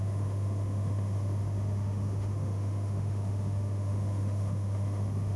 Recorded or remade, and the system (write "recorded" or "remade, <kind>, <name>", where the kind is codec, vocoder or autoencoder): remade, autoencoder, DAC-VAE